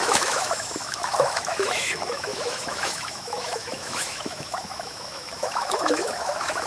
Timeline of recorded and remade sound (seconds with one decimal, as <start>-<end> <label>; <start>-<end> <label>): 0.0-6.7 remade